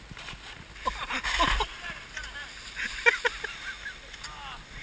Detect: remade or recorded recorded